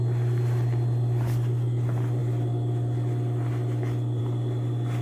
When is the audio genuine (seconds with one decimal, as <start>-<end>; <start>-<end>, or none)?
0.0-5.0